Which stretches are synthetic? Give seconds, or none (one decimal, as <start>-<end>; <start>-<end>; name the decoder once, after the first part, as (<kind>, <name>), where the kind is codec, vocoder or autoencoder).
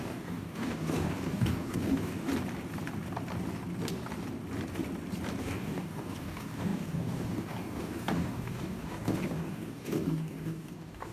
0.0-2.3 (codec, DAC); 5.4-11.1